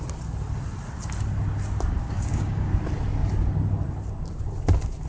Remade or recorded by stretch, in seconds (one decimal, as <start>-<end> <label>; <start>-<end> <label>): 0.0-2.0 recorded; 2.0-2.7 remade; 2.7-5.1 recorded